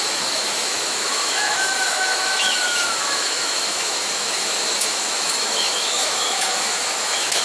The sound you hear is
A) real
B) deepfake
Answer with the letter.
B